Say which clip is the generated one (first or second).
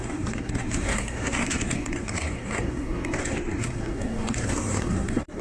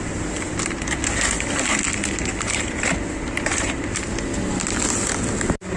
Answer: first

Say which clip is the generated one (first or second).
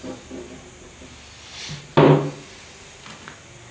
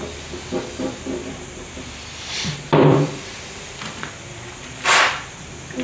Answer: second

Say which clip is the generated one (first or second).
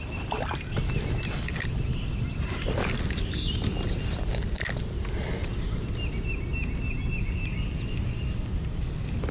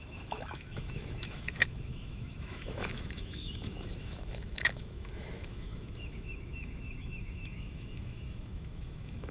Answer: second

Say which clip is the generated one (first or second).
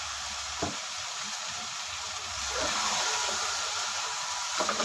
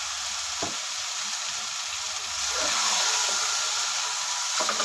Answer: first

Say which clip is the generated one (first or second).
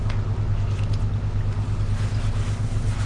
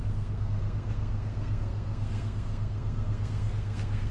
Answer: second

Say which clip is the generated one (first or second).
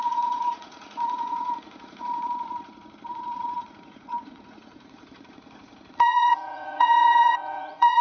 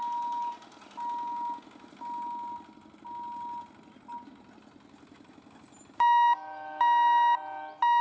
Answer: first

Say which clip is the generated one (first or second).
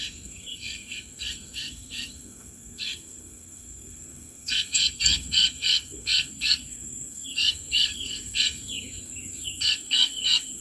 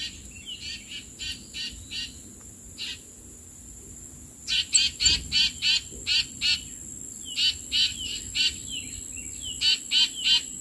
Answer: first